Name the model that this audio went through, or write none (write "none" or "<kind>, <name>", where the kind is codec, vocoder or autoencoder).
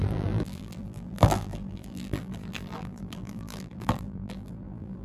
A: vocoder, BigVGAN v2